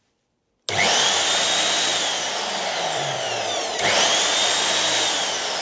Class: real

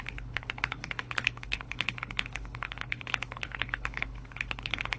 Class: fake